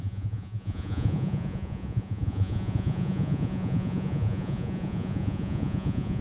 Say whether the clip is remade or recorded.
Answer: remade